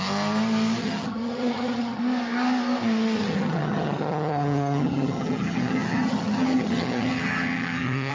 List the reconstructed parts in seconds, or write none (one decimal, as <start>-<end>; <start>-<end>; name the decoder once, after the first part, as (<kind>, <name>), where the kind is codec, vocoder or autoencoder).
0.8-2.0 (vocoder, HiFi-GAN); 3.2-8.1